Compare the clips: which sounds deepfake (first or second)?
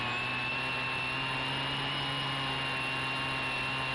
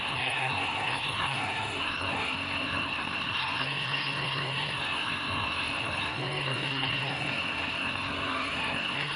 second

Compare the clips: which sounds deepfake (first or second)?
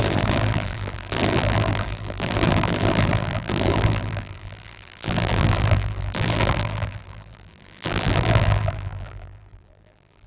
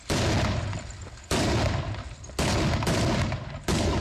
first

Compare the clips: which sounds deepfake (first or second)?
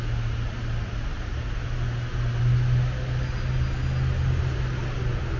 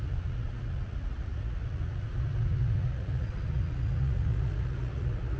second